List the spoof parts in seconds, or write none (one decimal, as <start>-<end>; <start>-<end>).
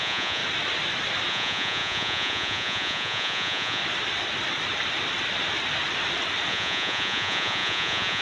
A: 0.0-0.4; 1.3-3.8; 6.5-8.2